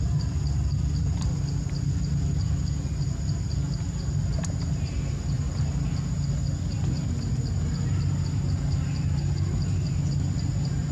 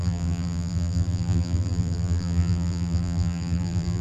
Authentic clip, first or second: first